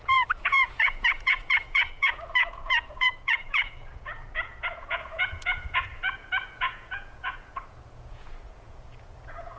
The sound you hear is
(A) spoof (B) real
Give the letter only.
A